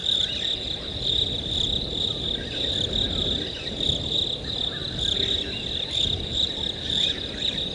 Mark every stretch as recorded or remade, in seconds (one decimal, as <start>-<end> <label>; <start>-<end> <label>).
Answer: 0.0-7.7 recorded

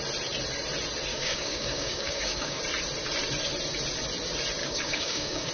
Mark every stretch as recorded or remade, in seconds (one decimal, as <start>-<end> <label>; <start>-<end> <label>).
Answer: 0.0-1.1 recorded; 1.1-2.6 remade; 2.6-4.6 recorded; 4.6-5.5 remade

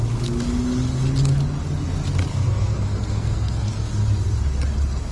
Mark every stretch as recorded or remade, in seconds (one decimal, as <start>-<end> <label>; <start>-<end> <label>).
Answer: 0.0-2.3 recorded; 2.3-3.9 remade; 3.9-5.1 recorded

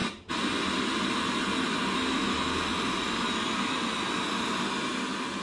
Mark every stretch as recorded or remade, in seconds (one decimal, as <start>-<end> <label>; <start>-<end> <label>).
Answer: 0.0-5.4 recorded